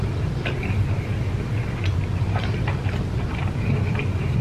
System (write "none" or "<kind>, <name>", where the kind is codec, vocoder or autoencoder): none